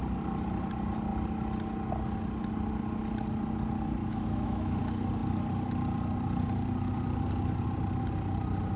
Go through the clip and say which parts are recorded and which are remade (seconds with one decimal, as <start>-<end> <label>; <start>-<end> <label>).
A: 0.0-4.0 recorded; 4.0-4.8 remade; 4.8-8.8 recorded